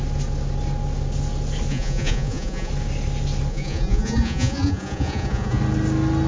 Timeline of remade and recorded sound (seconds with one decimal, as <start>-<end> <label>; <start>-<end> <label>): 0.0-1.7 recorded; 1.7-2.7 remade; 2.7-3.5 recorded; 3.5-5.6 remade; 5.6-6.3 recorded